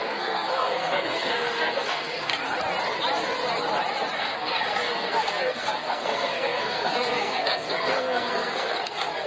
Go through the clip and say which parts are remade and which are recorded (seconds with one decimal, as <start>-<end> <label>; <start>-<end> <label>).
0.0-2.3 remade; 2.3-4.1 recorded; 4.1-9.3 remade